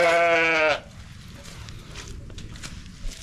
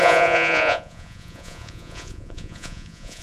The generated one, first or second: second